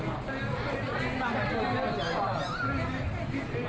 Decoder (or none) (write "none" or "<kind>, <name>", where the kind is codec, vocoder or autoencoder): none